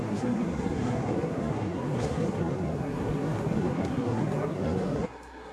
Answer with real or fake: fake